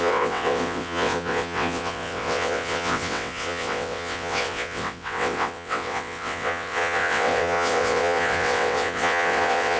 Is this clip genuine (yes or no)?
no